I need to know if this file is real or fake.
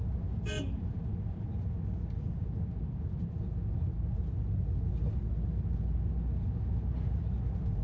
real